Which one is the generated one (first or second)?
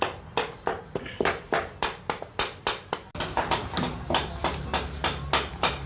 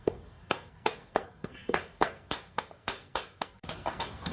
second